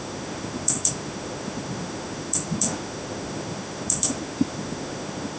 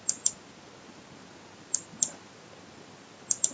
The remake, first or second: first